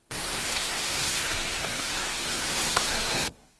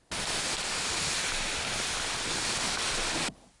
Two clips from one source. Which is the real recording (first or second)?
second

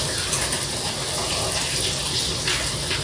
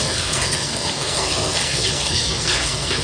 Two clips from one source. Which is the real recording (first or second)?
first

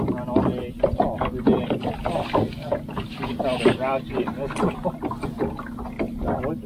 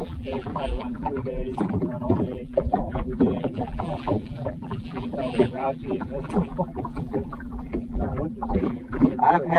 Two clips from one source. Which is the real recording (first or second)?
first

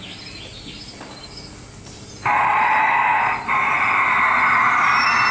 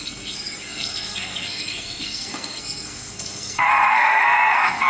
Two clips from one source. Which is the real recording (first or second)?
first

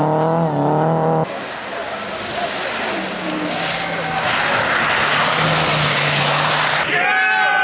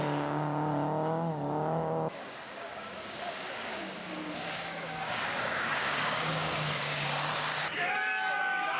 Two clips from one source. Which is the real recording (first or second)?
first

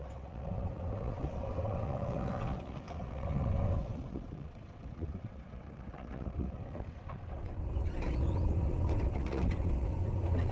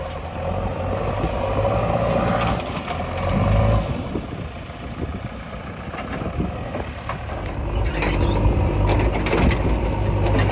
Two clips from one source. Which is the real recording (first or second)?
second